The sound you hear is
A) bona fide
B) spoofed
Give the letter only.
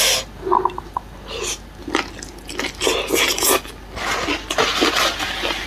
A